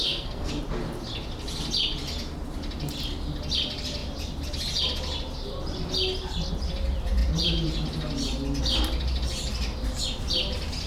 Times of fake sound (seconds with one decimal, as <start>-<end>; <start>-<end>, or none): 0.0-0.6